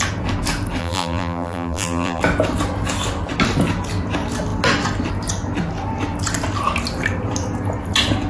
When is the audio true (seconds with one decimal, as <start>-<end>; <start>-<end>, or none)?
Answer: 0.0-0.8; 2.2-8.3